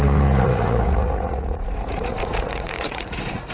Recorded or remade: remade